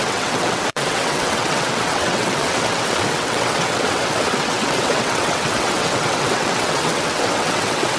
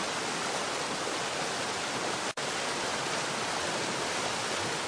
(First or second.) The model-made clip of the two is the first